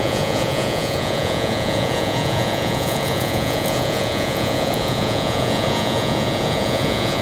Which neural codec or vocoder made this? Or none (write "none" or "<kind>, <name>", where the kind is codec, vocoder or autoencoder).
vocoder, Vocos